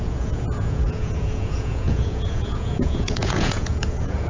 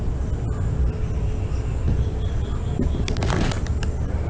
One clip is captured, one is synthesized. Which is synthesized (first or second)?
first